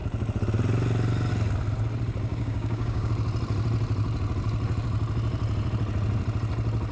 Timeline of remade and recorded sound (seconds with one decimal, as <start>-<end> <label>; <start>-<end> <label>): 0.0-2.3 recorded; 2.3-3.1 remade; 3.1-6.9 recorded